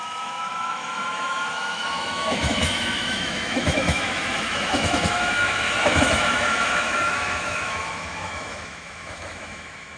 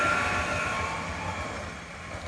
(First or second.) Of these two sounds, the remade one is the first